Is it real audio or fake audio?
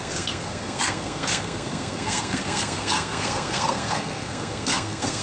fake